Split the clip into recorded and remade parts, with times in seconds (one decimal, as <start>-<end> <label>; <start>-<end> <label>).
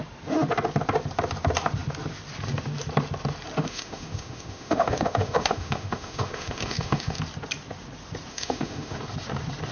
0.0-3.6 recorded; 3.6-7.2 remade; 7.2-8.3 recorded; 8.3-9.0 remade; 9.0-9.7 recorded